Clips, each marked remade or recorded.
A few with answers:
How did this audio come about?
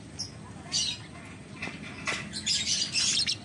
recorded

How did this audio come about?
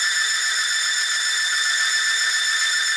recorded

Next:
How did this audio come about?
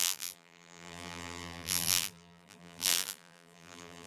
remade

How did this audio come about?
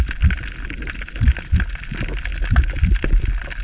recorded